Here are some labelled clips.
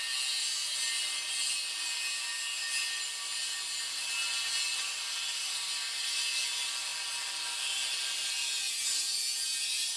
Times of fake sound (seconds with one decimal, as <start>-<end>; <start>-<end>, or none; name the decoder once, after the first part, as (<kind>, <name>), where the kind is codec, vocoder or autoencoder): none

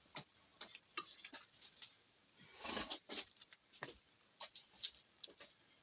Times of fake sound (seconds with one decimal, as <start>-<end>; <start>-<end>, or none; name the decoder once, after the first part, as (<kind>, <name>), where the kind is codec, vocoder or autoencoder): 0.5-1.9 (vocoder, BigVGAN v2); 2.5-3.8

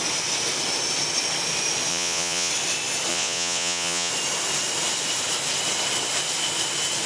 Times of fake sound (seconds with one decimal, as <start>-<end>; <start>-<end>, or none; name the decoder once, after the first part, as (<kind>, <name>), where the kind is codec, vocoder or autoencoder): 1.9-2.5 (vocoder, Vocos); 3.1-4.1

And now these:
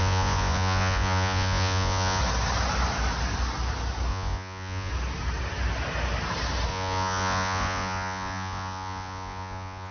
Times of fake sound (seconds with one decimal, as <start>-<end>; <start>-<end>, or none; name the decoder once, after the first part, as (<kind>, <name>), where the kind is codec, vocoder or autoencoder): 0.0-2.2 (vocoder, Vocos); 4.1-4.9; 6.7-9.9

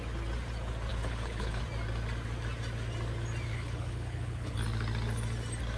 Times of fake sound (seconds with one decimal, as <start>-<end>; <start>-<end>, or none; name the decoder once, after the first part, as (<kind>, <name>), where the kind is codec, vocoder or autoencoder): 0.9-1.6 (codec, HILCodec); 3.5-4.6

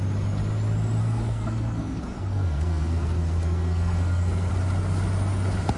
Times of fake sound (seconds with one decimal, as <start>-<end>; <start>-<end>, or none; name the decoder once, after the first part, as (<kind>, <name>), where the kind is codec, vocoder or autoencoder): 1.0-4.5 (codec, SNAC)

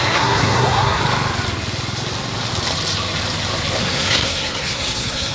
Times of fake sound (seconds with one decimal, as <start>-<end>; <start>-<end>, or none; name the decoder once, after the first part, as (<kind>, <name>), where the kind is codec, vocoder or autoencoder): 0.0-1.0 (codec, SNAC); 3.8-5.3

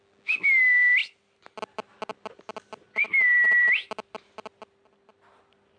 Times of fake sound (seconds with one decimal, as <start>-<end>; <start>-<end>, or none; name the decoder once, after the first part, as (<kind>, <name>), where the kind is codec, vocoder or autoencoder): none